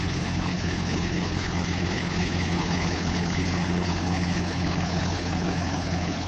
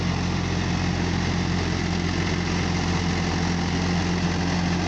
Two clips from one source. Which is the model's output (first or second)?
first